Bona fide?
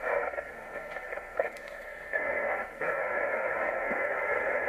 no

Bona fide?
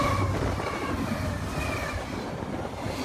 yes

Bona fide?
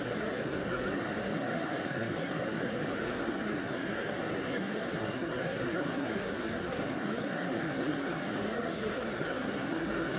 no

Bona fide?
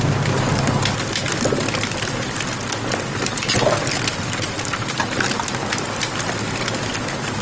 yes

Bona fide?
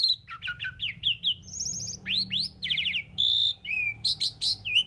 yes